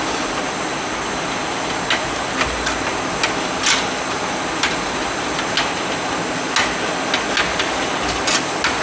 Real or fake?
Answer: real